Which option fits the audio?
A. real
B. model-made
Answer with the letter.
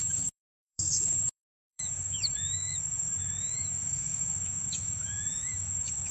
B